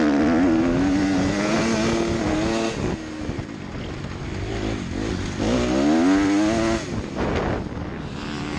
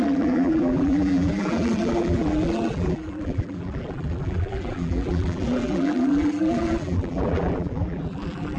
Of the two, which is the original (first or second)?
first